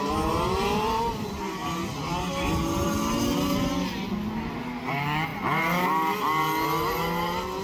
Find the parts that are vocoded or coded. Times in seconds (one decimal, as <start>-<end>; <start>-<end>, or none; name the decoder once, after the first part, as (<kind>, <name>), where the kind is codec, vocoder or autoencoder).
none